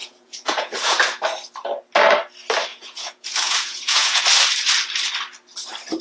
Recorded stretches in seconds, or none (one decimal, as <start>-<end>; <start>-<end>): 1.0-2.7; 4.2-6.0